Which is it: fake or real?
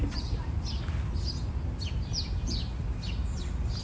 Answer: real